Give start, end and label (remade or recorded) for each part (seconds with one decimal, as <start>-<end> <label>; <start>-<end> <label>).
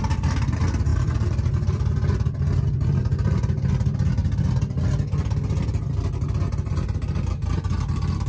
0.0-0.9 recorded; 0.9-1.9 remade; 1.9-3.1 recorded; 3.1-3.7 remade; 3.7-8.3 recorded